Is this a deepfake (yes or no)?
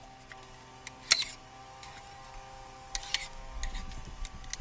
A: no